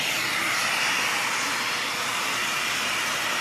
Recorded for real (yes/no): yes